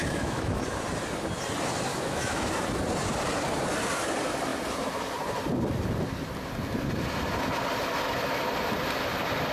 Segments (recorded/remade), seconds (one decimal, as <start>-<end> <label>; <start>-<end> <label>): 0.0-0.6 remade; 0.6-1.9 recorded; 1.9-2.5 remade; 2.5-9.5 recorded